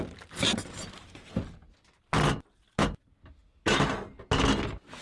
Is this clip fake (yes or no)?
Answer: no